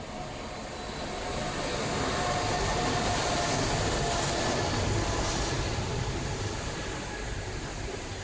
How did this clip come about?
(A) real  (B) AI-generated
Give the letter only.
A